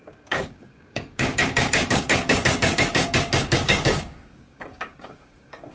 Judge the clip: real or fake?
fake